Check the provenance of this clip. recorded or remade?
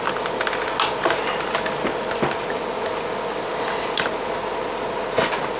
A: recorded